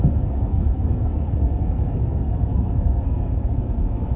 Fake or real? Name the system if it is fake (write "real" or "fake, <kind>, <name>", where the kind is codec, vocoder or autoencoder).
fake, codec, SNAC